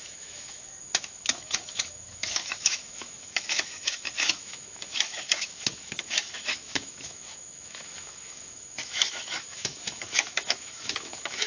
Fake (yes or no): yes